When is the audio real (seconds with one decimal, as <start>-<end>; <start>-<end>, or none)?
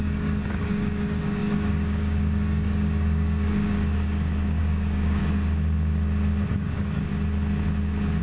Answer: 5.2-6.5; 7.1-8.2